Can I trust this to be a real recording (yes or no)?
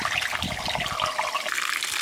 yes